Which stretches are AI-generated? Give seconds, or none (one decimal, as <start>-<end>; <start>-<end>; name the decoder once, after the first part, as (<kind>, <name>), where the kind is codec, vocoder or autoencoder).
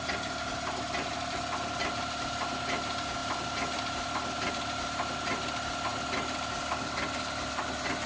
none